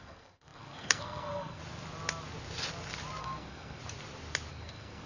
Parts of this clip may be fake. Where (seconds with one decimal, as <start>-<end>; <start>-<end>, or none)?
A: 0.0-1.6; 3.2-3.8; 4.5-5.1

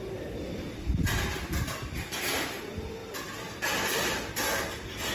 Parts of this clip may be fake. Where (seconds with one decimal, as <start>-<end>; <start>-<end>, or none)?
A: none